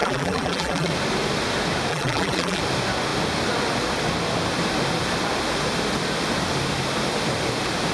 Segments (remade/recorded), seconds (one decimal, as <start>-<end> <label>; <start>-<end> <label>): 0.0-0.9 remade; 0.9-1.9 recorded; 1.9-2.6 remade; 2.6-7.9 recorded

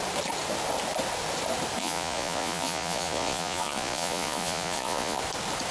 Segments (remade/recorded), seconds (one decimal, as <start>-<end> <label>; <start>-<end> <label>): 0.0-1.8 recorded; 1.8-5.2 remade; 5.2-5.7 recorded

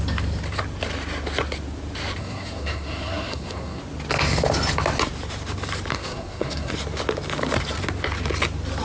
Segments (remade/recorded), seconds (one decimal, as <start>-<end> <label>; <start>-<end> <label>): 0.0-2.2 recorded; 2.2-3.8 remade; 3.8-5.9 recorded; 5.9-6.7 remade; 6.7-8.8 recorded

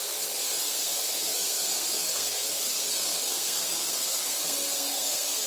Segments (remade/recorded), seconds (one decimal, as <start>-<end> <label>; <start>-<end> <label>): 0.0-5.5 remade

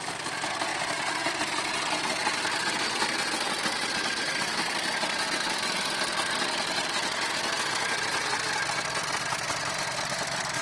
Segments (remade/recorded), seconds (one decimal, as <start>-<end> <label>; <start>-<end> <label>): 0.0-10.6 recorded

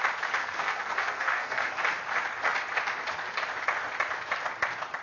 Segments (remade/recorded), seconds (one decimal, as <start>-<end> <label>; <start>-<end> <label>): 0.0-0.4 recorded; 0.4-1.7 remade; 1.7-5.0 recorded

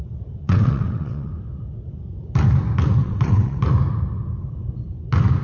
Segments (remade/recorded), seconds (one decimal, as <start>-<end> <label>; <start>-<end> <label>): 0.0-0.4 recorded; 0.4-1.3 remade; 1.3-3.0 recorded; 3.0-3.6 remade; 3.6-5.4 recorded

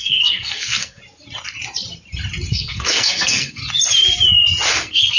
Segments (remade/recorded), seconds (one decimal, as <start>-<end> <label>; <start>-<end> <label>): 0.0-1.0 remade; 1.0-2.5 recorded; 2.5-3.6 remade; 3.6-4.7 recorded; 4.7-5.2 remade